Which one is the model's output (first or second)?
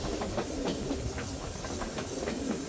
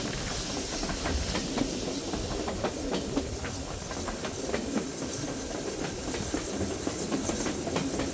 second